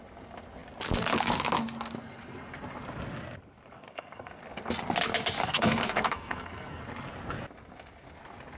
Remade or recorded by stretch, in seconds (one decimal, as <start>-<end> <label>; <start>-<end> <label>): 0.0-3.8 recorded; 3.8-4.4 remade; 4.4-5.4 recorded; 5.4-6.8 remade; 6.8-8.6 recorded